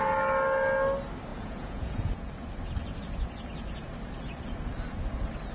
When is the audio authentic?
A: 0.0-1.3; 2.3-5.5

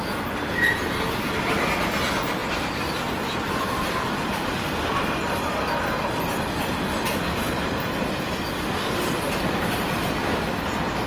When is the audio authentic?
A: 0.0-11.1

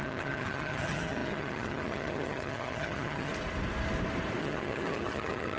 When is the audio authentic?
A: 3.3-4.4

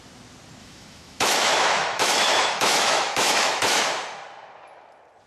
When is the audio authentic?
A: 0.0-0.6; 3.8-5.3